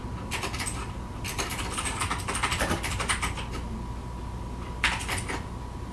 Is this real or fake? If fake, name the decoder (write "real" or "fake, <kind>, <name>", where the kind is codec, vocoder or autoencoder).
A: real